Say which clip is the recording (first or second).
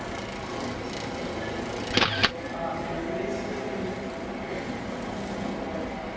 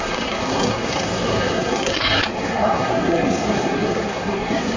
first